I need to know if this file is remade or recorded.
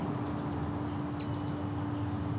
recorded